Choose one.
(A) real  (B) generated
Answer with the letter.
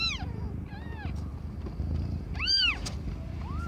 B